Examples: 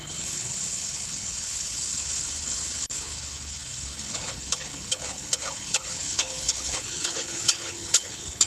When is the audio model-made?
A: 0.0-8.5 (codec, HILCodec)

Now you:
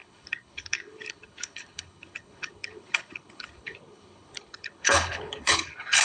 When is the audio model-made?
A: 0.0-6.0 (codec, HILCodec)

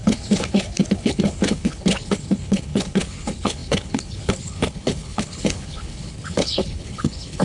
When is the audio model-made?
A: 0.0-7.4 (codec, HILCodec)

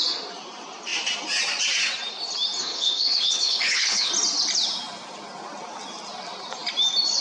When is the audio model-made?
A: 2.6-4.1 (codec, HILCodec)